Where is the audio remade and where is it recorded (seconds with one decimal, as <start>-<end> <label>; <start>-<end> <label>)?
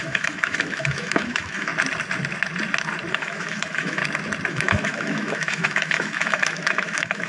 0.0-1.7 remade; 1.7-3.1 recorded; 3.1-4.0 remade; 4.0-4.5 recorded; 4.5-7.3 remade